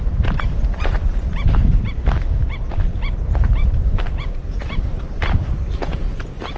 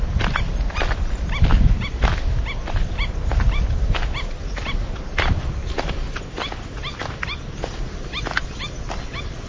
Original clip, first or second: second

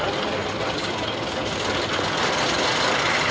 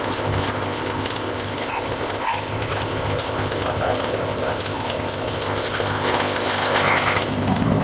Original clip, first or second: first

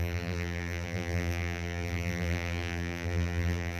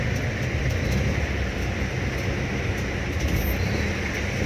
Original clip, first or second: second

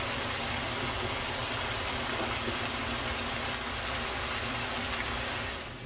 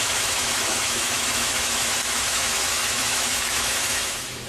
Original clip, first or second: first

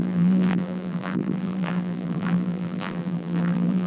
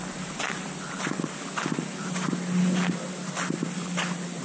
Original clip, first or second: second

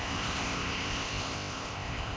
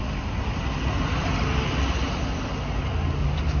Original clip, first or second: second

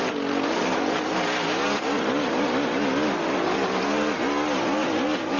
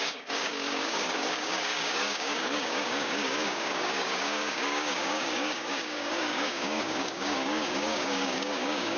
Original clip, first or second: first